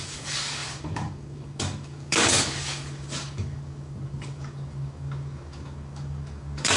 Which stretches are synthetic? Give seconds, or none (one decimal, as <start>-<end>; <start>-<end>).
0.0-6.8